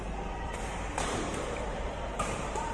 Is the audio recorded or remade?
remade